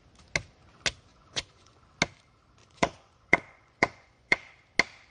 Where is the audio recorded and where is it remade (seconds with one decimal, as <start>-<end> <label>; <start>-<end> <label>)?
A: 0.0-1.1 recorded; 1.1-1.8 remade; 1.8-2.6 recorded; 2.6-4.5 remade; 4.5-5.1 recorded